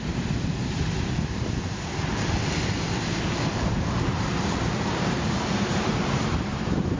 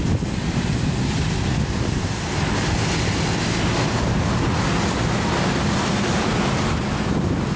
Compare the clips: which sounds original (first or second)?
second